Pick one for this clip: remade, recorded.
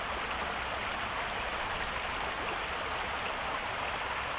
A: recorded